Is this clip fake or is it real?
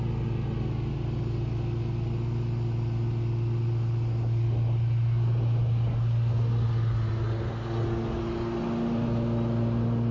real